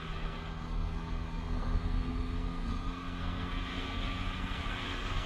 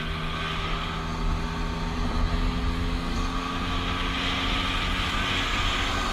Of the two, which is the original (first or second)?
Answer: second